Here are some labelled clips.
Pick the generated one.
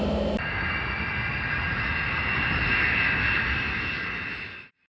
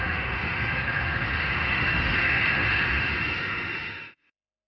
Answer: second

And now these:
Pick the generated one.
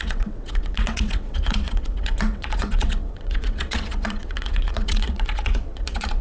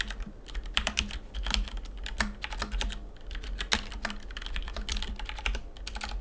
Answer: first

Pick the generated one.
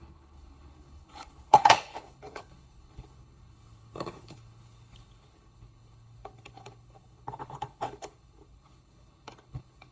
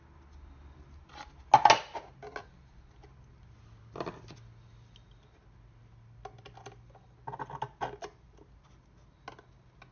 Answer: first